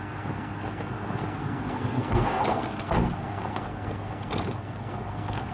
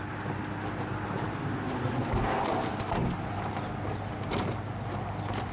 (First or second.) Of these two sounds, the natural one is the second